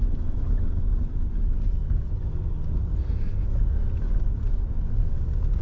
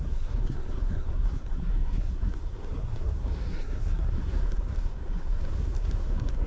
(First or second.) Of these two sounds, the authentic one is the first